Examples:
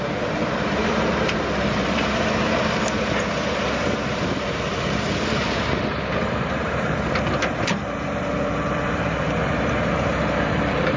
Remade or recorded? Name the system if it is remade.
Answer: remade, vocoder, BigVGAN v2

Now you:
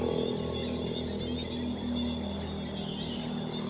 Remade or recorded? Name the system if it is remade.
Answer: recorded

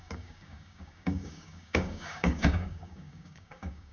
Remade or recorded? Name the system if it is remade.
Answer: remade, codec, DAC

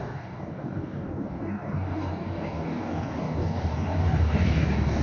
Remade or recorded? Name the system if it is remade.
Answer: remade, codec, DAC